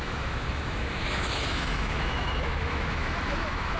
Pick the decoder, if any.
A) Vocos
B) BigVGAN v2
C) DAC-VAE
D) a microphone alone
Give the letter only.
C